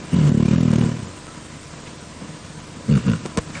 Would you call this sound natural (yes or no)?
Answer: yes